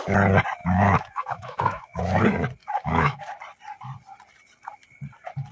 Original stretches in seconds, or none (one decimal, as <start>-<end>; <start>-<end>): 0.0-0.6; 2.0-2.6; 3.3-5.5